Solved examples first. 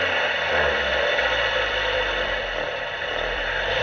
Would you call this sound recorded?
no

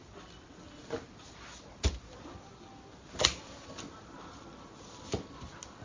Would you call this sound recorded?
yes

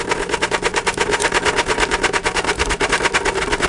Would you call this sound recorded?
yes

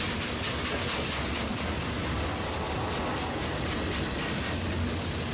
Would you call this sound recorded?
yes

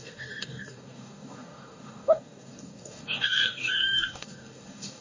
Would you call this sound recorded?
no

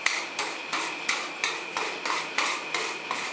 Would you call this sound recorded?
no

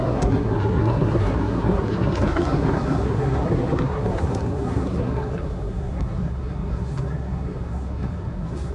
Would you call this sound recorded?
no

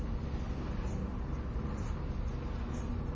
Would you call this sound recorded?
yes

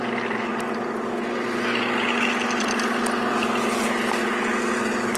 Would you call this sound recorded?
yes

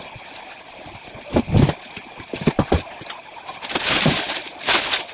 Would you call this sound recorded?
yes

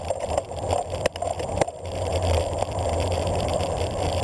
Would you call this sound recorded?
no